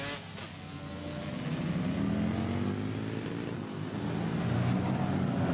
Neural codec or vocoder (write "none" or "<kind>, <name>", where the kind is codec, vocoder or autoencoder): none